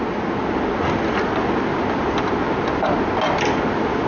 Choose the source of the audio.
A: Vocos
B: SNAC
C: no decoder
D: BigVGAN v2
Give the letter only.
C